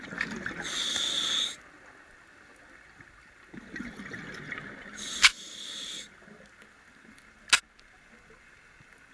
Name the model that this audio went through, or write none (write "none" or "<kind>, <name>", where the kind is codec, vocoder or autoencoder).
none